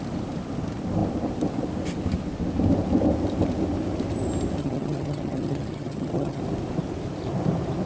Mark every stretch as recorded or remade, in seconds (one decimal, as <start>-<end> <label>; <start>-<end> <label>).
0.0-4.6 recorded; 4.6-6.4 remade; 6.4-7.9 recorded